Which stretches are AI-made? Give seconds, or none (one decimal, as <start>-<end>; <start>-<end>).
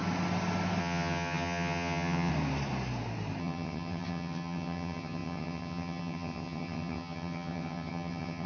0.8-2.3; 3.4-8.5